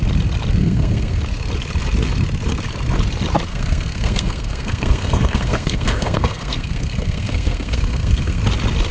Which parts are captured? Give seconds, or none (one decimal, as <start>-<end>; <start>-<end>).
0.0-0.6; 1.2-3.5; 8.4-8.9